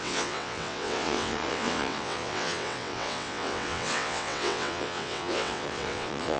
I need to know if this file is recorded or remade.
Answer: remade